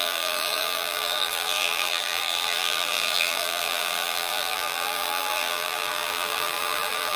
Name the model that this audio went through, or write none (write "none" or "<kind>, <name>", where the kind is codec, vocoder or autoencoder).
vocoder, BigVGAN v2